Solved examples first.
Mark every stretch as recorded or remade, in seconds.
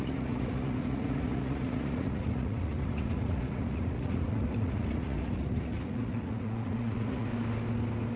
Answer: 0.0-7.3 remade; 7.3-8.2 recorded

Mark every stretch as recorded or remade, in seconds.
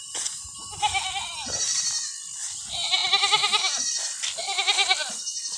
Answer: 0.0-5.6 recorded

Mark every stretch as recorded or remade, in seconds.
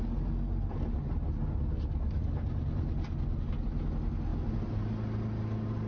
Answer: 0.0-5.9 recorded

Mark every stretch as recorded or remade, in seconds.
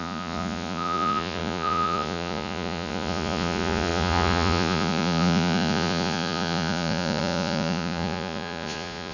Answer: 0.0-9.1 remade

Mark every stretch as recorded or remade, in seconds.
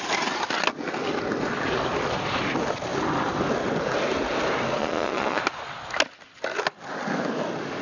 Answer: 0.0-4.8 recorded; 4.8-5.4 remade; 5.4-7.8 recorded